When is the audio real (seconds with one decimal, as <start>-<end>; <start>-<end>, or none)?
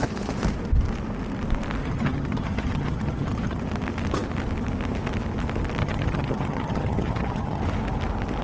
0.0-1.8; 3.6-5.8; 7.6-8.4